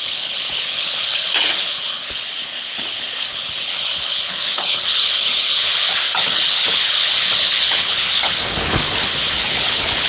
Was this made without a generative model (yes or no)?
no